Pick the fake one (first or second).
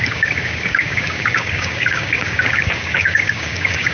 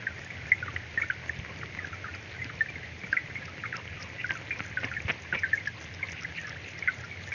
first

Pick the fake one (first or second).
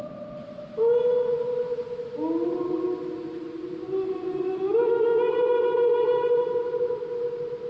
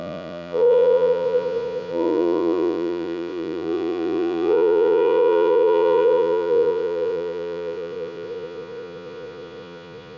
second